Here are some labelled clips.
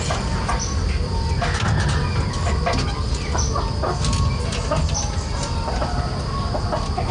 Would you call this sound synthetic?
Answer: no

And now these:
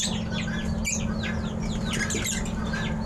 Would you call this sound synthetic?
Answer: no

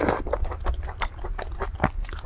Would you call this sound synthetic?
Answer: yes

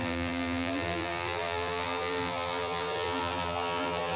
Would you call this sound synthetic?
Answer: yes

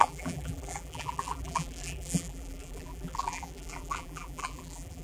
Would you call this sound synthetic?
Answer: yes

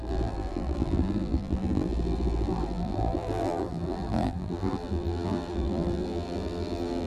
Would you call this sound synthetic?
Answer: yes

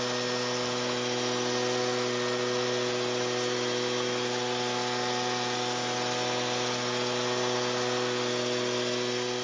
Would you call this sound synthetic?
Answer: no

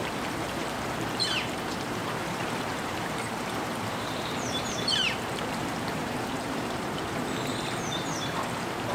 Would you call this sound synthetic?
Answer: yes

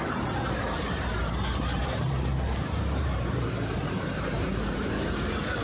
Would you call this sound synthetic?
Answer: yes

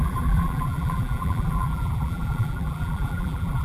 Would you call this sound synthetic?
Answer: yes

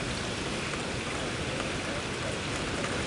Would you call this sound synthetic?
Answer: yes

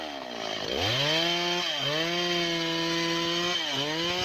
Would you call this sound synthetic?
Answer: no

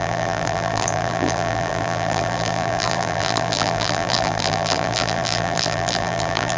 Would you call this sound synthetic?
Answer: yes